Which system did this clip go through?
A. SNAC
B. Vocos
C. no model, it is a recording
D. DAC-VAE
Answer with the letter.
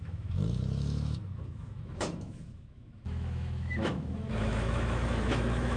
D